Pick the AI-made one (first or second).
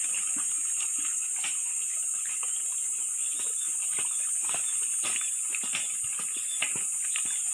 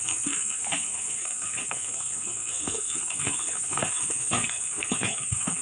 second